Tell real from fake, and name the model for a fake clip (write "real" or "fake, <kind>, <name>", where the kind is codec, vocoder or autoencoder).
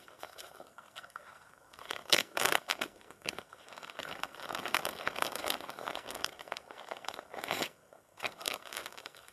fake, codec, SNAC